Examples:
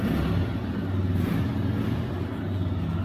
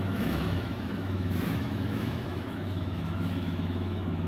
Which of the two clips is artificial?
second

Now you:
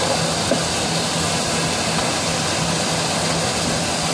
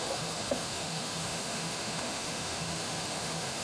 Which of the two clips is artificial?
second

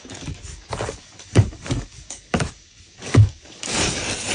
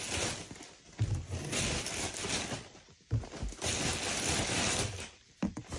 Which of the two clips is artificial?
first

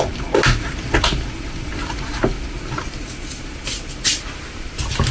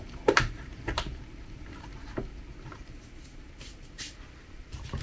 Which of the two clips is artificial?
second